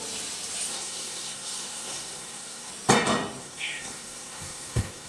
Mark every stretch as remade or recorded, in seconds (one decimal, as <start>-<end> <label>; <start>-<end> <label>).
0.0-0.7 recorded; 0.7-2.7 remade; 2.7-3.4 recorded; 3.4-5.1 remade